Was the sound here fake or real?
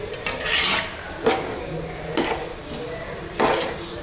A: real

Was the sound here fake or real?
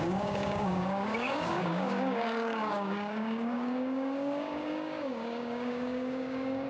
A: fake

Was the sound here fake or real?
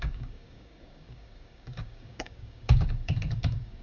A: fake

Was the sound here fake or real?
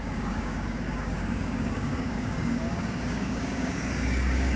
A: fake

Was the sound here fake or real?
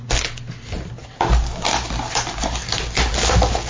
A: real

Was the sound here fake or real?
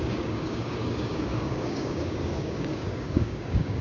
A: fake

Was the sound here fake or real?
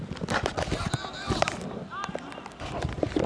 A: real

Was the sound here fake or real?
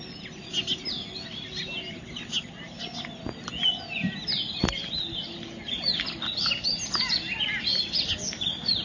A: real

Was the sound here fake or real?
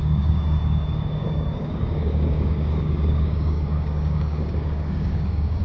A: fake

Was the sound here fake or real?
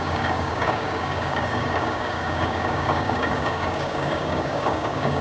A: fake